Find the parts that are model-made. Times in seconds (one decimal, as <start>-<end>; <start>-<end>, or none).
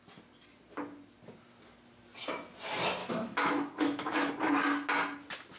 3.0-4.3